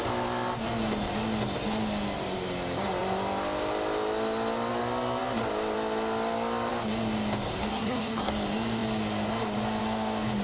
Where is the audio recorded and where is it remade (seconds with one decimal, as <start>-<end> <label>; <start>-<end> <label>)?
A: 0.0-7.7 recorded; 7.7-8.3 remade; 8.3-10.4 recorded